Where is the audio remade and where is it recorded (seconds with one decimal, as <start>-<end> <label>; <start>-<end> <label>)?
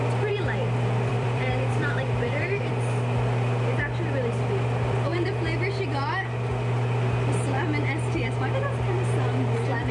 0.0-1.1 recorded; 1.1-2.7 remade; 2.7-9.9 recorded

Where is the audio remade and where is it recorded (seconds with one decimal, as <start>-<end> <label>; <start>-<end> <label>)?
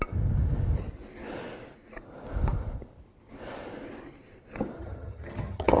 0.0-4.8 recorded; 4.8-5.8 remade